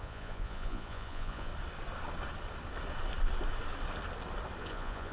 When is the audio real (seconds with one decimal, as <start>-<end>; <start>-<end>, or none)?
1.5-4.6